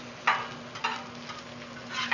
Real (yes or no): yes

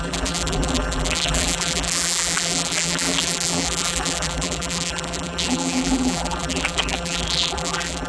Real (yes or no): no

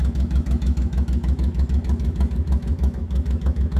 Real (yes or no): no